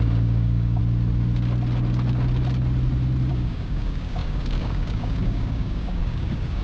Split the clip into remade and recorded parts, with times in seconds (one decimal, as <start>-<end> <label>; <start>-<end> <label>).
0.0-0.8 remade; 0.8-3.3 recorded; 3.3-6.6 remade